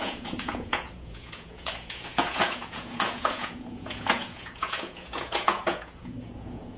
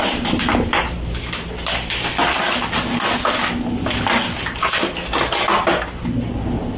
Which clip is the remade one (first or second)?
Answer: first